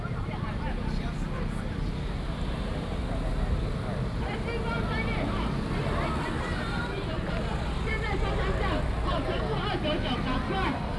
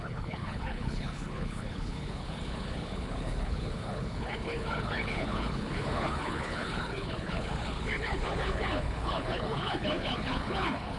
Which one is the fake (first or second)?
second